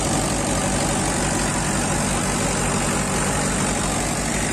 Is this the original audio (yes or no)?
yes